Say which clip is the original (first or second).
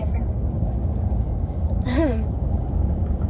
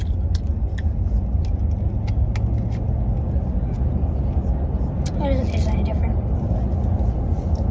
second